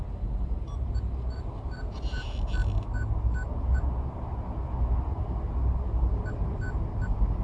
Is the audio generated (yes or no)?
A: no